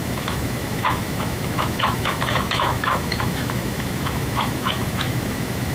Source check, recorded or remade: remade